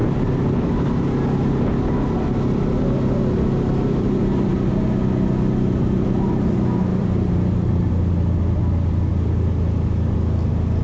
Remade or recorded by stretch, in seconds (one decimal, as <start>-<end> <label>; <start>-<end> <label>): 0.0-6.9 recorded; 6.9-7.9 remade; 7.9-10.8 recorded